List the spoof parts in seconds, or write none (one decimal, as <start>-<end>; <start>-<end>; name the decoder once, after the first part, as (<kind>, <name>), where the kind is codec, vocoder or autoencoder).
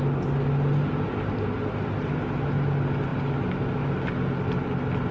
none